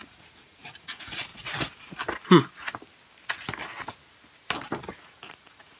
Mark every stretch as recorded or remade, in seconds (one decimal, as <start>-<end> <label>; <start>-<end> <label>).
0.0-1.3 remade; 1.3-4.8 recorded; 4.8-5.8 remade